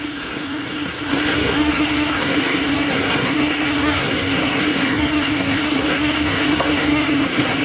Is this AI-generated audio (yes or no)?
yes